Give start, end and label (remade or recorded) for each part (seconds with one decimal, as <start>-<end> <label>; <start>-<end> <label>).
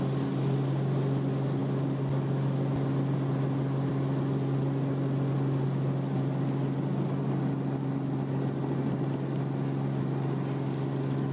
0.0-11.3 recorded